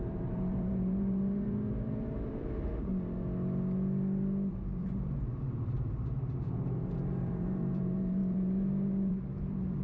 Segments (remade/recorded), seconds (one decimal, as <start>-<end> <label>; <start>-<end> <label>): 0.0-2.9 remade; 2.9-4.5 recorded; 4.5-9.8 remade